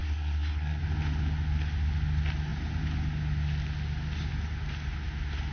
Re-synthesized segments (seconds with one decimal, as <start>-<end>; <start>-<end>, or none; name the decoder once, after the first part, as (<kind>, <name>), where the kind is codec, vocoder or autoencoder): 0.0-0.8 (codec, SNAC)